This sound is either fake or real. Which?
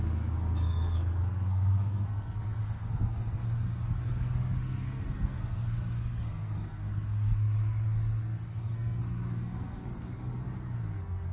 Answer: fake